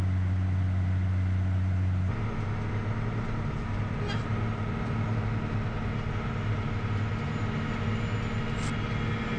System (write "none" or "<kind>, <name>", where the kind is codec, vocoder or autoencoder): none